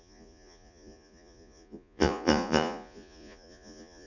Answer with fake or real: fake